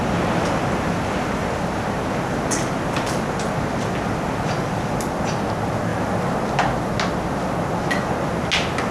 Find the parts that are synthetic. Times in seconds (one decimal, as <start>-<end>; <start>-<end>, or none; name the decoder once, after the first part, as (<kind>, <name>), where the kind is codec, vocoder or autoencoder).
none